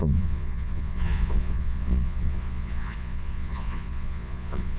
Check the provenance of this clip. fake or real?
fake